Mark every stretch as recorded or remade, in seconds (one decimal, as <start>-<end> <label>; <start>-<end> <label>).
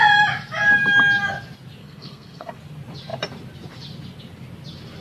0.0-1.8 recorded; 1.8-2.6 remade; 2.6-5.0 recorded